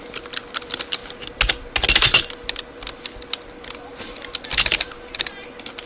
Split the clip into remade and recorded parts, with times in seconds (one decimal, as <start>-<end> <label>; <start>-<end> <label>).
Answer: 0.0-5.9 recorded